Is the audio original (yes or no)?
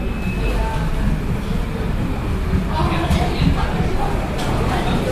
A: yes